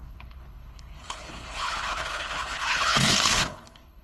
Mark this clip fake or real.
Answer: fake